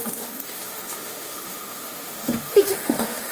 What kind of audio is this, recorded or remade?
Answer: remade